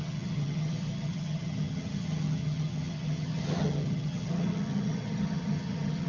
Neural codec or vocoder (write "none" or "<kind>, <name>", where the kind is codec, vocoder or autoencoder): vocoder, HiFi-GAN